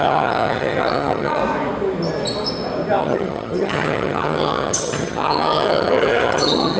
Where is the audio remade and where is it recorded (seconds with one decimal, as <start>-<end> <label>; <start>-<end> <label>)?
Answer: 0.0-1.4 remade; 1.4-3.0 recorded; 3.0-6.8 remade